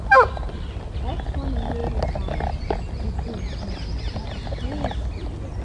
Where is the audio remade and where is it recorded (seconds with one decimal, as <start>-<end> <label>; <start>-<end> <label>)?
0.0-5.6 recorded